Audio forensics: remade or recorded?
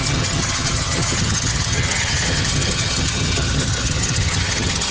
remade